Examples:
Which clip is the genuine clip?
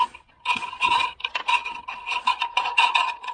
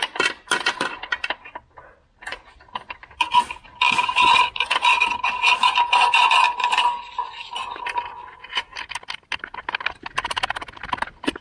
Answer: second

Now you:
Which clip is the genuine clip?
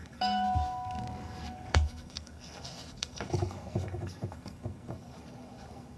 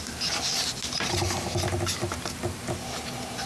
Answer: second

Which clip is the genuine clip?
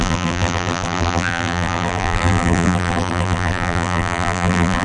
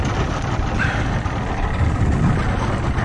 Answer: second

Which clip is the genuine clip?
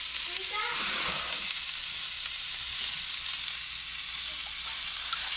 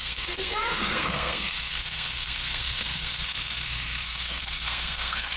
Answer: first